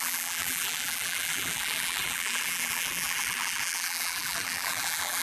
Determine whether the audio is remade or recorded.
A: remade